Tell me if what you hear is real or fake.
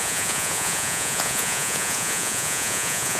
fake